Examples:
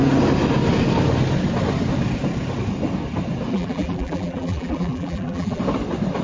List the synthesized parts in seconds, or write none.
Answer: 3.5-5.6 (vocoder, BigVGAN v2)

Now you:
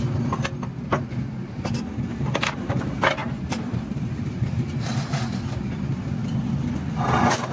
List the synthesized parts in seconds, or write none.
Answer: 3.2-5.2 (vocoder, BigVGAN v2)

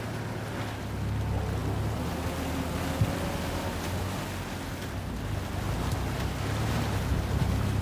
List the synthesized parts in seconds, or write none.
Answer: none